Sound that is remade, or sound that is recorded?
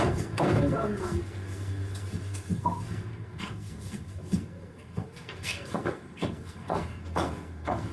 remade